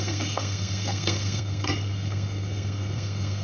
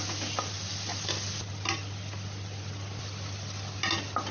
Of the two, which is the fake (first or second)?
first